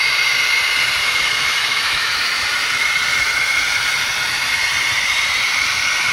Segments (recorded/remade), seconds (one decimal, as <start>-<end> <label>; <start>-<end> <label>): 0.0-1.0 recorded; 1.0-2.3 remade; 2.3-6.1 recorded